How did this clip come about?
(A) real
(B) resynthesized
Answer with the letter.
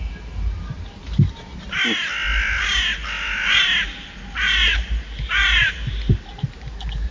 A